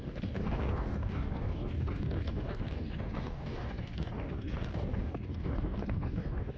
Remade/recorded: remade